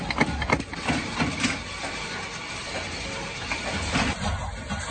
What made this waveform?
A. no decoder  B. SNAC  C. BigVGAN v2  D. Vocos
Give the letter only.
A